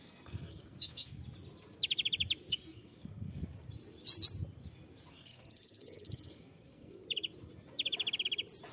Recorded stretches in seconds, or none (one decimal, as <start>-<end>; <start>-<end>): 1.2-2.5; 3.4-5.1; 7.0-8.7